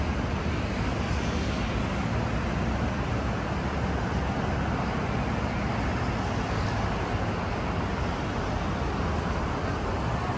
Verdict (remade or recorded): recorded